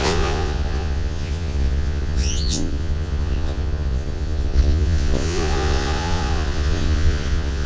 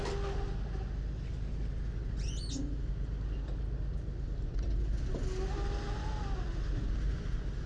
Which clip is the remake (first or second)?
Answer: first